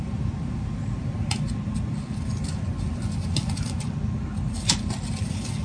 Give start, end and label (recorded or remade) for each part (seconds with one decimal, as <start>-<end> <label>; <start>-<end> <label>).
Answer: 0.0-1.0 remade; 1.0-5.6 recorded